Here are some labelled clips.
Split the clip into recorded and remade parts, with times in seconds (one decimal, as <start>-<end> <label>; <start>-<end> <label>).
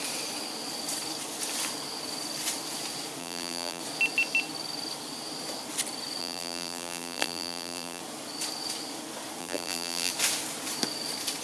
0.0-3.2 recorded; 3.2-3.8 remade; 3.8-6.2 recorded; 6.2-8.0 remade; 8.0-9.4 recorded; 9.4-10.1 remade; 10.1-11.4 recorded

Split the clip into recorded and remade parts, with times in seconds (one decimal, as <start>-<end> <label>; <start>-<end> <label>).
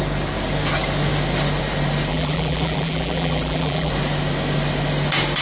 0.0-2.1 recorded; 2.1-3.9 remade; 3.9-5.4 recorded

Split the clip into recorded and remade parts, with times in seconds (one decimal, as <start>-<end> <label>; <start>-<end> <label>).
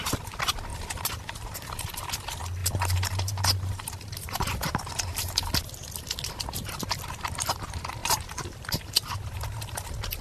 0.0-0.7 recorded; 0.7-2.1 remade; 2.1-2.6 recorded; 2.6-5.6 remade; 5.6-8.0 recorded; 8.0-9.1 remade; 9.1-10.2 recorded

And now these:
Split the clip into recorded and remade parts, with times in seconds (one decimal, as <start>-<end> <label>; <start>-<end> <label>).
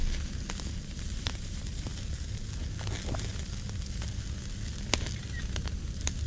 0.0-0.8 recorded; 0.8-1.9 remade; 1.9-5.2 recorded; 5.2-6.3 remade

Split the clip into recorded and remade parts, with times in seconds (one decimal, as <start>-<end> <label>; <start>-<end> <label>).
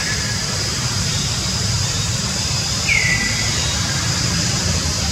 0.0-3.1 remade; 3.1-3.5 recorded; 3.5-5.1 remade